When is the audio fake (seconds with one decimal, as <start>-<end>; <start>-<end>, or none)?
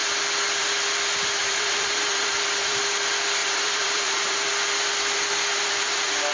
1.4-2.8; 3.4-4.5; 5.5-6.3